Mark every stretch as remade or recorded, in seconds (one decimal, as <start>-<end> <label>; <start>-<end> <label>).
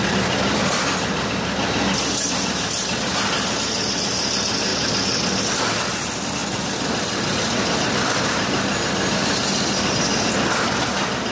0.0-4.7 recorded; 4.7-5.4 remade; 5.4-6.4 recorded; 6.4-9.9 remade; 9.9-11.3 recorded